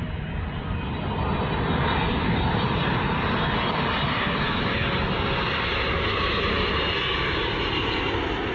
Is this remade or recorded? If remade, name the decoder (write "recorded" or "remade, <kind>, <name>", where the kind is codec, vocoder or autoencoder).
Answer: recorded